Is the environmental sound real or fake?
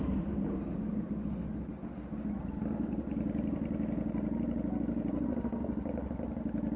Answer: real